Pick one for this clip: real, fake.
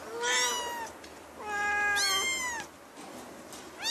real